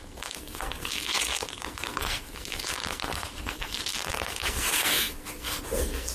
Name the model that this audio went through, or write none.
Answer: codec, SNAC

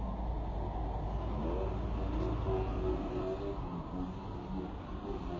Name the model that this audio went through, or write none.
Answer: none